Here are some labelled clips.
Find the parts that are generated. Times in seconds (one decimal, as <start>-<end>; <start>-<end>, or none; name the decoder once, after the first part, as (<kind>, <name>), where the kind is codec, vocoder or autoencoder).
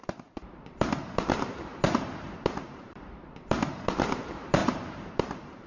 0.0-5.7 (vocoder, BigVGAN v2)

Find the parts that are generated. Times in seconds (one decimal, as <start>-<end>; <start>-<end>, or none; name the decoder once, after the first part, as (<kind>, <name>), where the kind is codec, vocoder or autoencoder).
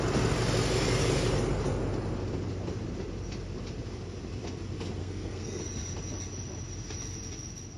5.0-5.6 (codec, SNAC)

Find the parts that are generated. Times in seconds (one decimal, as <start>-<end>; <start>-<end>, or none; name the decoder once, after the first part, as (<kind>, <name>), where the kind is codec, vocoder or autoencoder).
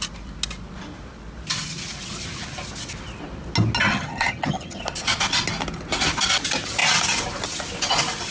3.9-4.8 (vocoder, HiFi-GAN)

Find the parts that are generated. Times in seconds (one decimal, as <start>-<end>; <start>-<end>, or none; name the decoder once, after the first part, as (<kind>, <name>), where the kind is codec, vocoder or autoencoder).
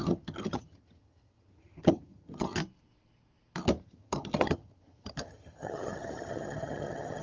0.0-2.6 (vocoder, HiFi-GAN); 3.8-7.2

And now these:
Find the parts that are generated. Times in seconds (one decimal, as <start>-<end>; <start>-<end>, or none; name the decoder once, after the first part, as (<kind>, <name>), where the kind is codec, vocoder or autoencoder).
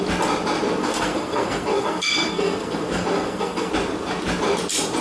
0.8-3.7 (codec, SNAC)